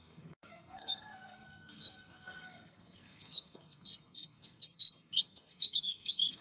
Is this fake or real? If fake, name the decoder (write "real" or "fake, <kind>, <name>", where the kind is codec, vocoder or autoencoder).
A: fake, codec, SNAC